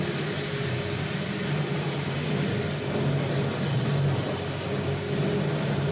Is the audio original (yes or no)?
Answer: yes